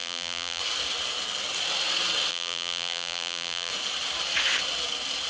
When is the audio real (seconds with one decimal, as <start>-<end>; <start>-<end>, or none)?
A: 0.6-2.3; 3.7-5.3